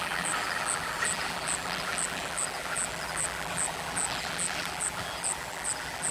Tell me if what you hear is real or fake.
fake